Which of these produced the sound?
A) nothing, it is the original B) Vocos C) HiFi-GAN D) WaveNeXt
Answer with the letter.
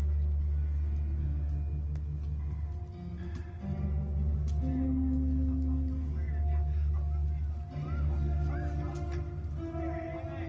A